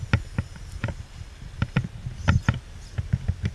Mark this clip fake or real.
real